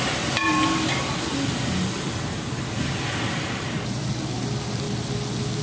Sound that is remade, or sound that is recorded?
recorded